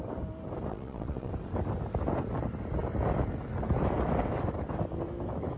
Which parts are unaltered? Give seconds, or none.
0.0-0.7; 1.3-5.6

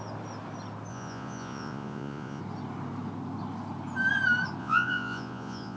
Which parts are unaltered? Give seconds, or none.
0.0-0.9; 2.4-4.6

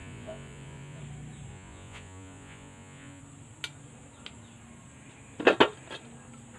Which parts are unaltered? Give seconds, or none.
1.0-1.5; 3.2-6.6

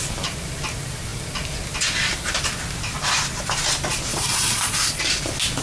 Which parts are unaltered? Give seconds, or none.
0.0-4.1; 5.0-5.6